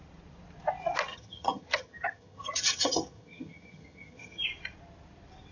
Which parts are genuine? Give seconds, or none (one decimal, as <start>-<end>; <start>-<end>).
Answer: 0.0-1.1; 4.4-5.5